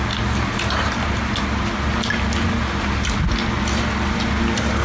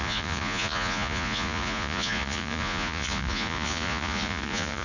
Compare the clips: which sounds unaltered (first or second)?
first